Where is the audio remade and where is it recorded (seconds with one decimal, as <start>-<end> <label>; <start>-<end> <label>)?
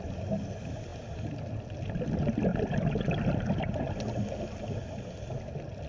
0.0-5.9 recorded